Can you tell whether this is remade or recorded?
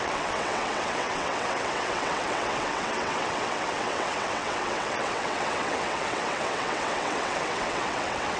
remade